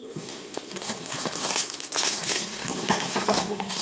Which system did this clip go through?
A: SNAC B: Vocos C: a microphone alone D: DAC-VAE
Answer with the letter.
A